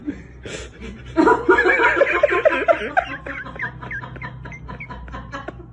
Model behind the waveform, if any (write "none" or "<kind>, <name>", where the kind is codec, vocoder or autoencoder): none